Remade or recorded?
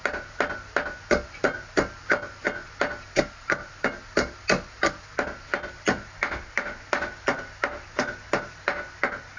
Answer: recorded